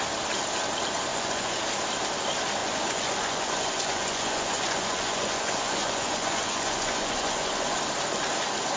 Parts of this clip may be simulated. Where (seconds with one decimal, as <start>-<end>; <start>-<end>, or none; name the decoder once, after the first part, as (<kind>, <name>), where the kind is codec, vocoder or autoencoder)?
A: 1.1-1.6 (vocoder, Vocos); 2.6-7.8